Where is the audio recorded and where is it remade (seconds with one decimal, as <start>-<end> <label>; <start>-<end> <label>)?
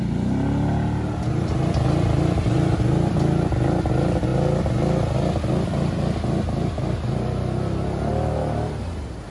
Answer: 0.0-9.3 recorded